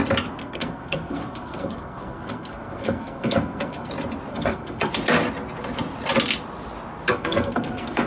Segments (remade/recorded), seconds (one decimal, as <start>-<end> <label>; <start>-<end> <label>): 0.0-0.4 recorded; 0.4-3.9 remade; 3.9-4.3 recorded; 4.3-4.9 remade; 4.9-7.1 recorded; 7.1-8.1 remade